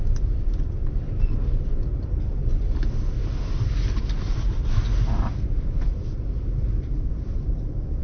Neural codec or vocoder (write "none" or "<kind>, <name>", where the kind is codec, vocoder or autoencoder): none